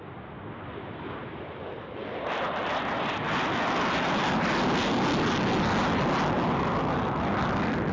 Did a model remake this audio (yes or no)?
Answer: no